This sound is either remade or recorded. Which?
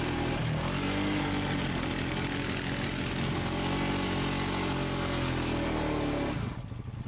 recorded